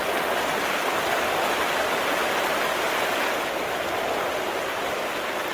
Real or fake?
real